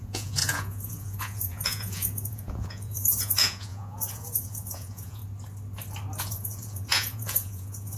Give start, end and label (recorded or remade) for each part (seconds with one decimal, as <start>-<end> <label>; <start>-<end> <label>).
0.0-5.2 remade; 5.2-6.2 recorded; 6.2-8.0 remade